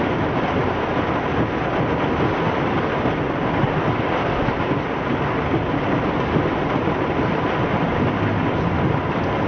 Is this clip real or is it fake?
real